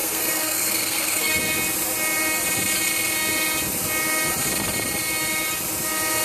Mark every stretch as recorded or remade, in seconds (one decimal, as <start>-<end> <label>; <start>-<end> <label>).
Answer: 0.0-1.4 remade; 1.4-6.2 recorded